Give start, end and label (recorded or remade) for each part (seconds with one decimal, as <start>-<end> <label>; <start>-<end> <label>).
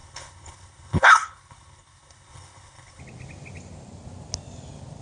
0.0-3.0 remade; 3.0-5.0 recorded